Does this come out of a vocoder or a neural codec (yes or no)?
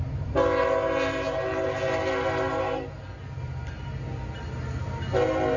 no